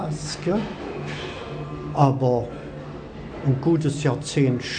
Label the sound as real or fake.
real